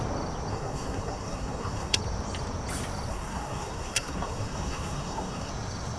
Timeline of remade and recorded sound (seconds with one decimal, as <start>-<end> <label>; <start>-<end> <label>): 0.0-0.5 recorded; 0.5-2.0 remade; 2.0-3.1 recorded; 3.1-5.5 remade; 5.5-6.0 recorded